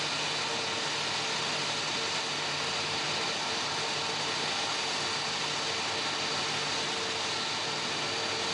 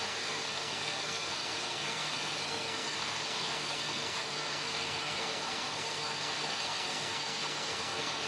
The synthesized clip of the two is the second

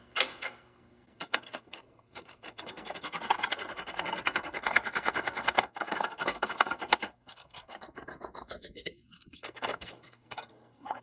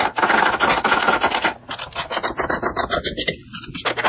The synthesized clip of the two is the first